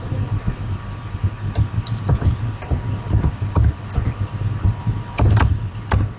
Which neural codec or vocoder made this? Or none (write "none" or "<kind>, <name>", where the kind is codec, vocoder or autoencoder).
none